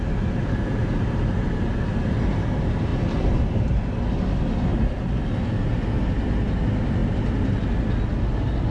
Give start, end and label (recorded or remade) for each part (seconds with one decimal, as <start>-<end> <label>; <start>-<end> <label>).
0.0-2.9 recorded; 2.9-3.8 remade; 3.8-4.7 recorded; 4.7-5.2 remade; 5.2-7.0 recorded; 7.0-7.5 remade; 7.5-8.7 recorded